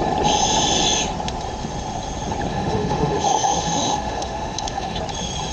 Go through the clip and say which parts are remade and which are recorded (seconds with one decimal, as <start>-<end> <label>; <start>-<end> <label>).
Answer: 0.0-2.5 recorded; 2.5-5.0 remade; 5.0-5.5 recorded